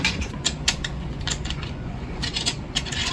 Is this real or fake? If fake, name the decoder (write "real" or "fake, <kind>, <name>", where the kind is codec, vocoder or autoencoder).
fake, vocoder, Vocos